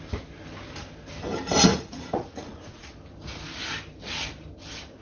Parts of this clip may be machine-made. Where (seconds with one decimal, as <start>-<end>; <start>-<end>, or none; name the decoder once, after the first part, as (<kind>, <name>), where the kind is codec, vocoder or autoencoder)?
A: 1.7-2.9 (vocoder, Vocos)